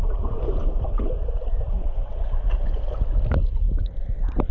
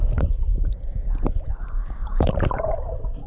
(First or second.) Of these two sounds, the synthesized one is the second